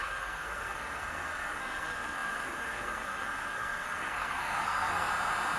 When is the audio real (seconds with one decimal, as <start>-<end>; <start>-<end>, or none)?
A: 5.1-5.6